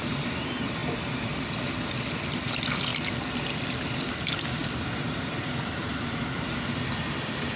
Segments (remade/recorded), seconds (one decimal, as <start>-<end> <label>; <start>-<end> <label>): 0.0-2.9 remade; 2.9-3.6 recorded; 3.6-7.6 remade